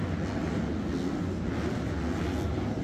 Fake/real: real